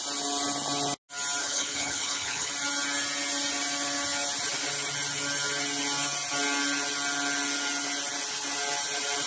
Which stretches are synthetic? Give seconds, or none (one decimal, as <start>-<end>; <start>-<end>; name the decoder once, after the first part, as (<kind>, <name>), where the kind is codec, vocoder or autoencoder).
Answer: 1.4-2.5 (codec, HILCodec)